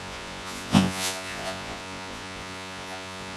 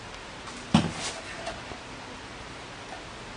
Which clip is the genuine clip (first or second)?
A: second